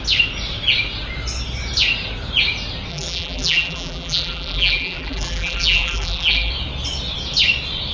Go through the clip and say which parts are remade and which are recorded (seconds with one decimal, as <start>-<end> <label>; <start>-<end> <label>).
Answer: 0.0-2.9 recorded; 2.9-6.5 remade; 6.5-7.9 recorded